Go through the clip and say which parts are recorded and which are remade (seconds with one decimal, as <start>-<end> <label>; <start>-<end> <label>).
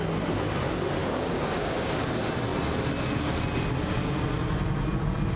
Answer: 0.0-1.0 recorded; 1.0-2.0 remade; 2.0-5.4 recorded